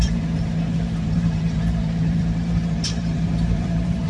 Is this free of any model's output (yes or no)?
no